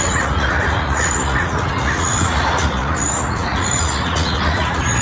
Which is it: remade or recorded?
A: remade